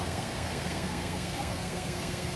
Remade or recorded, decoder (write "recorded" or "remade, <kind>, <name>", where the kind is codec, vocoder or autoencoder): remade, codec, SNAC